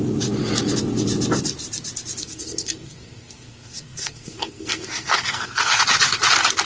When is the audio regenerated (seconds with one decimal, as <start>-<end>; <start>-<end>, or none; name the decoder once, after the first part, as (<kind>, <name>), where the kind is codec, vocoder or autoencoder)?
2.2-5.8 (codec, SNAC)